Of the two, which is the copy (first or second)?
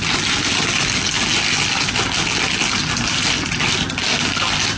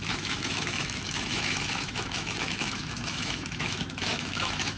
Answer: second